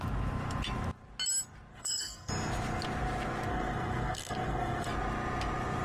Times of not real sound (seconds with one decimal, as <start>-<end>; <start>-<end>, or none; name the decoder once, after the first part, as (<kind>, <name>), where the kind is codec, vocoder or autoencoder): 1.7-2.3 (codec, SNAC); 3.5-4.9